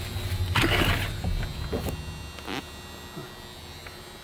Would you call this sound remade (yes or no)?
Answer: no